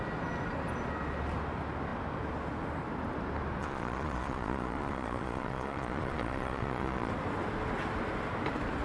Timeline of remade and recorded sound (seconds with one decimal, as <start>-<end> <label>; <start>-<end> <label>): 0.0-3.6 recorded; 3.6-7.1 remade; 7.1-8.8 recorded